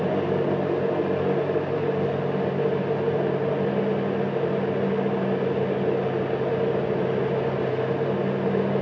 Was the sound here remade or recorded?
recorded